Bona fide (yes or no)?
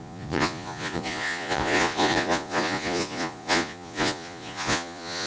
no